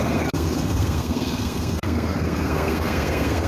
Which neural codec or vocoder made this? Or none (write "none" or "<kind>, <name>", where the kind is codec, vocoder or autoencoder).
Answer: codec, SNAC